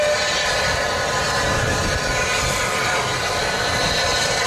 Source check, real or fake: real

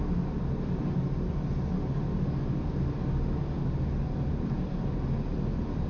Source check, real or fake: real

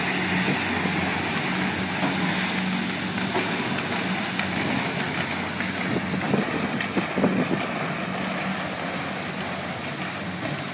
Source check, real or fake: real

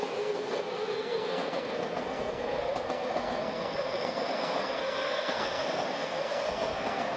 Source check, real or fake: fake